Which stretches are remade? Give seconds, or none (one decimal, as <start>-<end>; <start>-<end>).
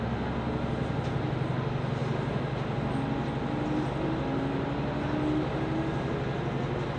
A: none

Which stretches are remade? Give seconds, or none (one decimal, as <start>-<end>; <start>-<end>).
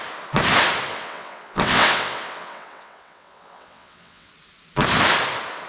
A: 0.9-4.3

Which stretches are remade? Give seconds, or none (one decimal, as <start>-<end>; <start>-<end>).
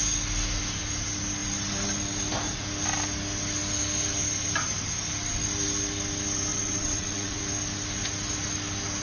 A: 6.5-7.4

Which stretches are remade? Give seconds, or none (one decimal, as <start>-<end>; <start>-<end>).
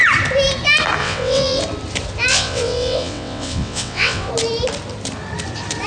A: 1.0-1.6; 2.3-4.3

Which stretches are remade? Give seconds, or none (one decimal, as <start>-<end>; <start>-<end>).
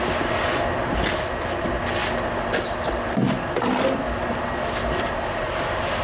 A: none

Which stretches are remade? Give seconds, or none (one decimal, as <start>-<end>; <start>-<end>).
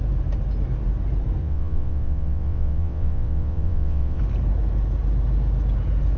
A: 1.4-4.2